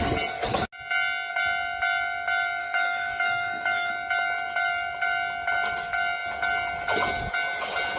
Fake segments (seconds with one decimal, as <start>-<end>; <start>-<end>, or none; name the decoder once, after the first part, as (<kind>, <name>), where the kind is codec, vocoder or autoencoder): 2.6-3.9 (autoencoder, DAC-VAE)